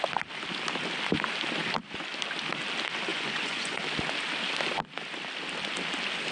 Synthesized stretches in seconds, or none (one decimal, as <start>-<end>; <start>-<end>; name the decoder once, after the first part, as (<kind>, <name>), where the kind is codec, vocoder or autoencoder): 3.1-3.8 (vocoder, Vocos)